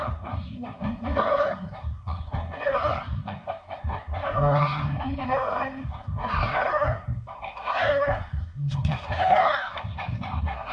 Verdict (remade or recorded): remade